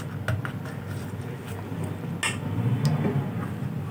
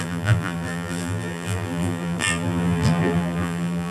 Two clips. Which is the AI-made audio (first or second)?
second